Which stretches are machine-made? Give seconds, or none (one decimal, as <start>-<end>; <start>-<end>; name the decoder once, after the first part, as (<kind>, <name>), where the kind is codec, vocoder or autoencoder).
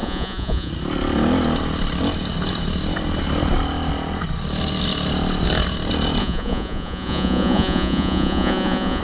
0.0-0.7 (vocoder, Vocos); 6.2-9.0